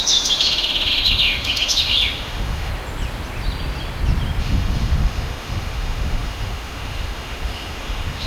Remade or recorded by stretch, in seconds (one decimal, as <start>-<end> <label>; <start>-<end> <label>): 0.0-2.7 remade; 2.7-4.4 recorded; 4.4-8.3 remade